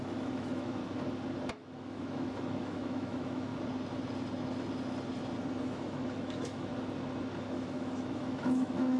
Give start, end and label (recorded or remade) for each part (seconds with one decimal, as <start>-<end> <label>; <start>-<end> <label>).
0.0-0.8 remade; 0.8-1.5 recorded; 1.5-3.5 remade; 3.5-5.6 recorded; 5.6-6.7 remade; 6.7-7.4 recorded; 7.4-9.0 remade